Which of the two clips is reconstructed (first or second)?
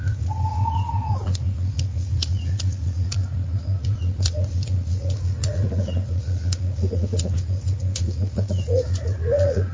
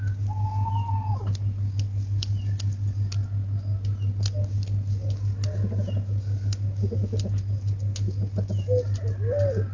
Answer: first